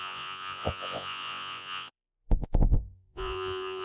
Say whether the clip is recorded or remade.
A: remade